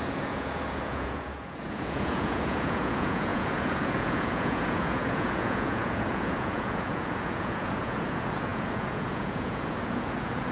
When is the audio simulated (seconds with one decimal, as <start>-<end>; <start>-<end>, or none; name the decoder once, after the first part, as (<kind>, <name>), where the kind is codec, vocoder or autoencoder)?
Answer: 0.0-10.5 (vocoder, Vocos)